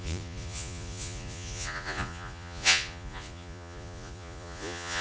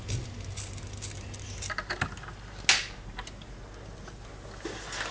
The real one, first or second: second